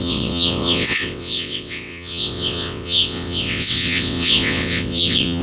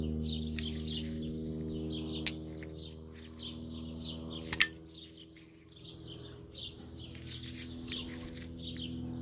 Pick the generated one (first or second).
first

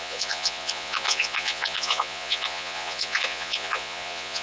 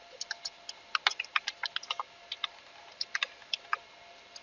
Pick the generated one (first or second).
first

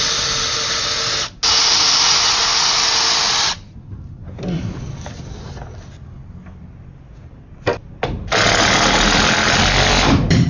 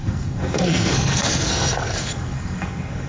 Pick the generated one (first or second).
second